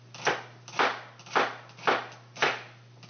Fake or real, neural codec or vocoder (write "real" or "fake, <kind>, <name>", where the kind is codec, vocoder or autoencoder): real